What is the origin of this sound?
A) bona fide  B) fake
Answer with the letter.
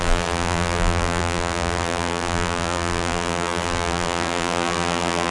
B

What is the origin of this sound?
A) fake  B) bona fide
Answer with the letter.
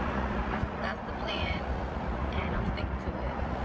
A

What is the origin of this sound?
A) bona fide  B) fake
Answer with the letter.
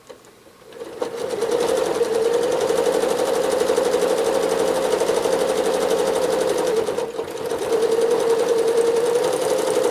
B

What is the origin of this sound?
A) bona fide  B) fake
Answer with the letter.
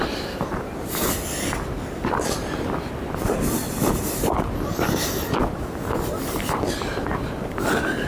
A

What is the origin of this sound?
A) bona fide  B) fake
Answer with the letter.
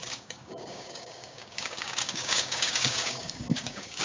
B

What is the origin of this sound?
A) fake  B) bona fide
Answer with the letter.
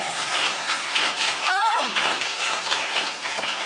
A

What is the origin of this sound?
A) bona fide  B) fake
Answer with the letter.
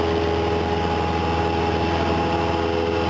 B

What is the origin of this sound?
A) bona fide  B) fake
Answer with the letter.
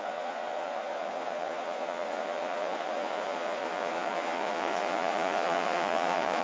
B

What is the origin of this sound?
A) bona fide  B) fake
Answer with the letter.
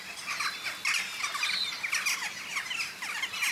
A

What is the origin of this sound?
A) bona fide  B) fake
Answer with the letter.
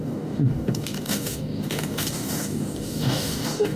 B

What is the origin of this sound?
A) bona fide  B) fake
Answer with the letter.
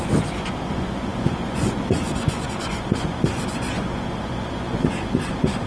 B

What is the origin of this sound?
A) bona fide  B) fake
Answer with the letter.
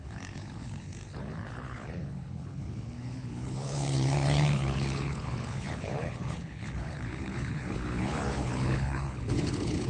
B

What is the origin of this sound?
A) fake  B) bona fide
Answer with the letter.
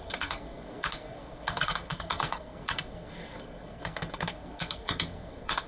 A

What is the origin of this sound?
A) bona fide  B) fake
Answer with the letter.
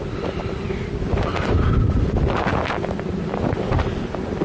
A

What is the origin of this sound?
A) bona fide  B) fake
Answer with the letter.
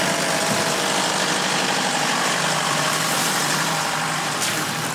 B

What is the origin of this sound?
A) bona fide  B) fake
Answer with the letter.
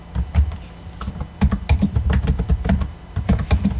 A